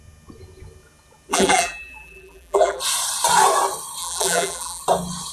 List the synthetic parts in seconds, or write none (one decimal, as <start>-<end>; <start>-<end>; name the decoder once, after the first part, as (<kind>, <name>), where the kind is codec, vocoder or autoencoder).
1.3-2.8 (vocoder, BigVGAN v2); 4.0-4.8